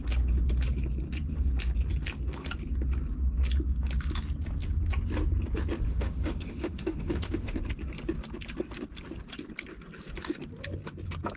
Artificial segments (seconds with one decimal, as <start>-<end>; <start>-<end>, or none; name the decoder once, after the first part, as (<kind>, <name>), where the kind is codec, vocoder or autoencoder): 5.9-7.6 (autoencoder, DAC-VAE)